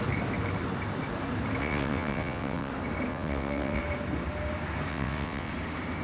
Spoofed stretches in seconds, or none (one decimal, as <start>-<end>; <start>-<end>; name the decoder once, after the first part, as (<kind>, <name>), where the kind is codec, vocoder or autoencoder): 1.6-2.7 (vocoder, WaveNeXt); 3.1-3.8; 4.9-5.5